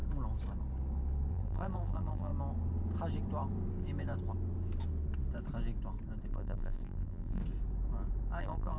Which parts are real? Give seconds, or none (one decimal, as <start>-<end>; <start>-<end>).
0.0-1.3; 2.3-6.3; 7.4-8.4